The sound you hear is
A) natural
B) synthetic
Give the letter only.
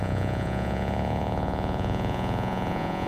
B